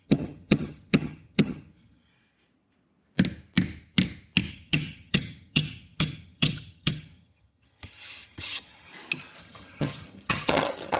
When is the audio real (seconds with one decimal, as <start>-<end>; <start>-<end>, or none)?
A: 2.1-4.5; 8.9-9.4